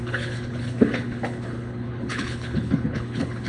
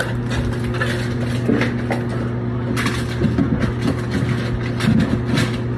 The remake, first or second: first